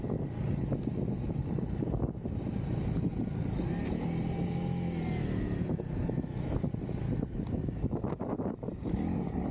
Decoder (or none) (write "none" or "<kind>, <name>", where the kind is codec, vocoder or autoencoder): none